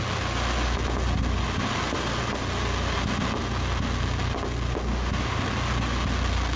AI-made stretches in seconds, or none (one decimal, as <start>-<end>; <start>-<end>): 4.9-5.4